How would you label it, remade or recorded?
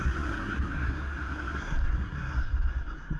remade